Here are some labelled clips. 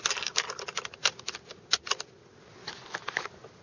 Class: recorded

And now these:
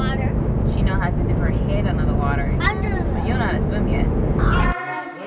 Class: recorded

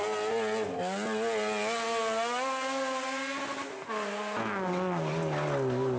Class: recorded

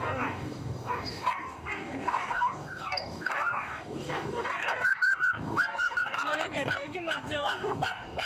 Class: remade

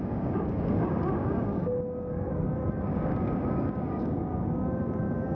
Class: remade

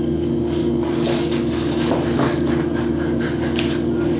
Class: remade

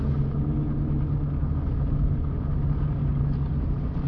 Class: recorded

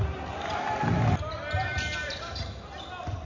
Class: recorded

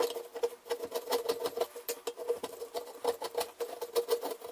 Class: recorded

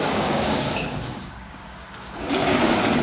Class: remade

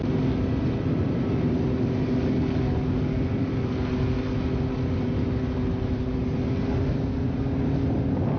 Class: recorded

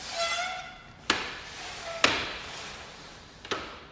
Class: recorded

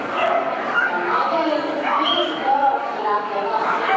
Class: remade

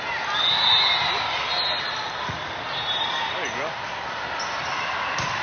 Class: recorded